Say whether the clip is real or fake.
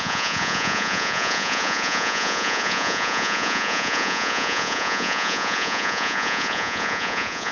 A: fake